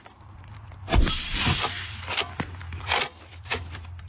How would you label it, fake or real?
fake